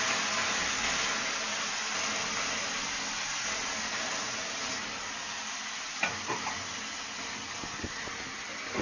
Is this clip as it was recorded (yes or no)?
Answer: yes